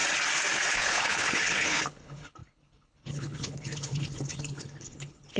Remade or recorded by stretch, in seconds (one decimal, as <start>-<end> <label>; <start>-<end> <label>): 0.0-0.7 recorded; 0.7-5.4 remade